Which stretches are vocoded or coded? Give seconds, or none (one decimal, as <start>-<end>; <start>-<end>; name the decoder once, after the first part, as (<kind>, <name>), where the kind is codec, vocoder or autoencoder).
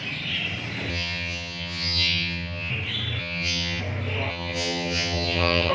0.9-2.7 (vocoder, HiFi-GAN); 3.2-3.8; 4.3-5.7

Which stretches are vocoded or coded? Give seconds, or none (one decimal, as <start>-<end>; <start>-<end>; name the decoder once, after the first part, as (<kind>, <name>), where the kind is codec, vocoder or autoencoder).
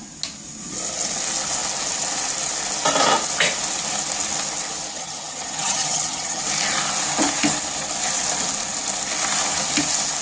4.9-6.4 (vocoder, HiFi-GAN)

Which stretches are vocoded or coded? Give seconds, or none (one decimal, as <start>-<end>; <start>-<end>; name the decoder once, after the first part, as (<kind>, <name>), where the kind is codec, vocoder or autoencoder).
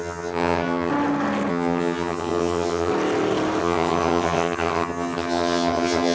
0.0-0.9 (vocoder, HiFi-GAN); 1.5-2.9; 3.6-6.1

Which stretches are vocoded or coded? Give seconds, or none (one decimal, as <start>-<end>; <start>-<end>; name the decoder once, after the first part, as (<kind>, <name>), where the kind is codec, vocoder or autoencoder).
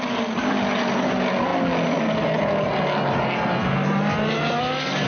none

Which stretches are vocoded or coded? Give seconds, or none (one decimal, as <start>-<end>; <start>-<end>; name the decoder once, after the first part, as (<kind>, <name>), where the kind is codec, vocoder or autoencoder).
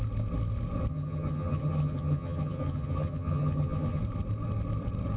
0.9-4.0 (vocoder, HiFi-GAN)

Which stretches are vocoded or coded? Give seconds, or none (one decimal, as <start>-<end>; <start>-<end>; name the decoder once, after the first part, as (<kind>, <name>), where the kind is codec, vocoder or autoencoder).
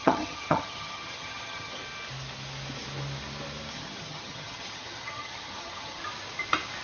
0.0-1.8 (vocoder, HiFi-GAN); 3.7-6.0